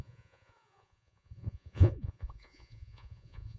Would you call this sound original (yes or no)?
no